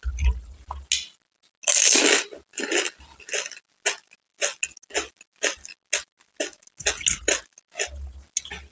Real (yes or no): yes